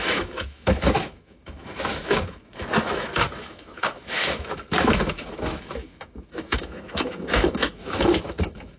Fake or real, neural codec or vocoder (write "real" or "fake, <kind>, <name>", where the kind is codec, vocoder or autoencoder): fake, autoencoder, DAC-VAE